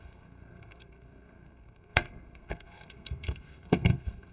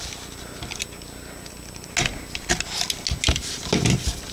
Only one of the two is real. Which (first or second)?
second